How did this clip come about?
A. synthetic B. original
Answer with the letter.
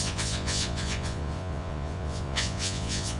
A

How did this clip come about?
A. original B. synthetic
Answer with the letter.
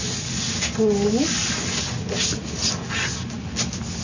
A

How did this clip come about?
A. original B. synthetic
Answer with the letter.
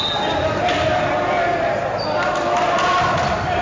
A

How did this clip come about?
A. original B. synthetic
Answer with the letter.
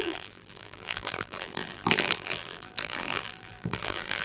B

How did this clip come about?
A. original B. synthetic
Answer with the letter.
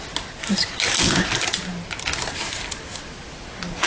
A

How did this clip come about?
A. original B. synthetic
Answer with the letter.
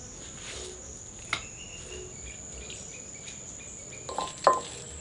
A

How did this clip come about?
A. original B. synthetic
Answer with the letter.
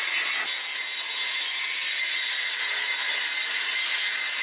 A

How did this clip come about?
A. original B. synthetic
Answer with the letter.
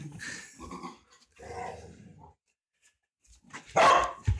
A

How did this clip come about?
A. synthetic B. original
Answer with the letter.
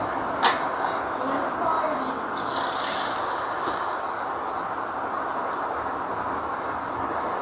B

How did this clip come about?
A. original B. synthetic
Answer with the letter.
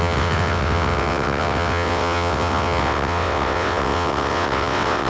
B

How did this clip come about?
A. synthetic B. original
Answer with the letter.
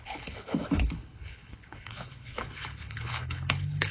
A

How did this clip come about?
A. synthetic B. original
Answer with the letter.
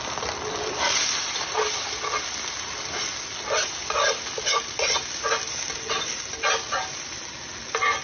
B